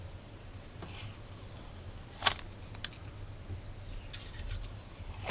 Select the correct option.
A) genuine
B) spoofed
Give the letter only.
A